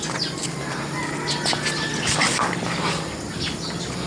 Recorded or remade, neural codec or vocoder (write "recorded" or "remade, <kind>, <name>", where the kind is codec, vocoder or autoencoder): recorded